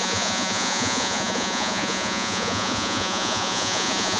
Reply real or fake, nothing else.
fake